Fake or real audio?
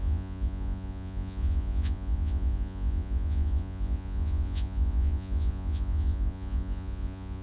fake